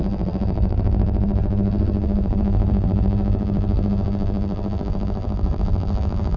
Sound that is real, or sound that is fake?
fake